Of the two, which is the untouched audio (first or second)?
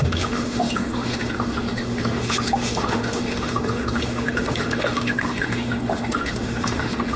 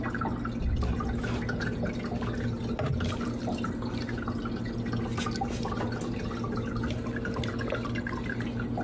second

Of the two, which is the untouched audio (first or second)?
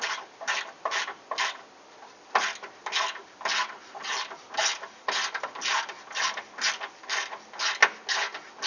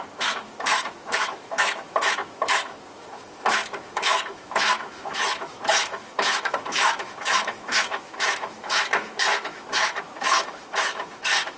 first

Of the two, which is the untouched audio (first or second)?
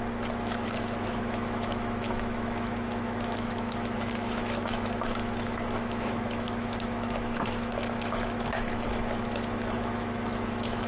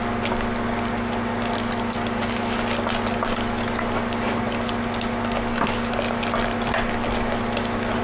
second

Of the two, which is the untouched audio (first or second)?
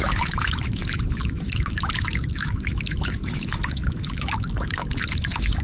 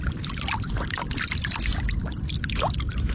second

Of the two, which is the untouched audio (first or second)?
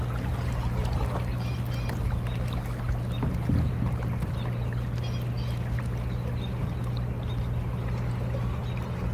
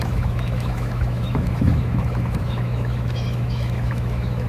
first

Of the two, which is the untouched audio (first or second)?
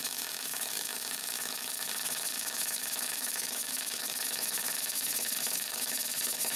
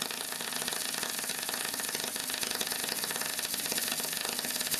second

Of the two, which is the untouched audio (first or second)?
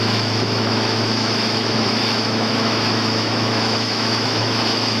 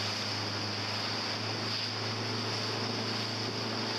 second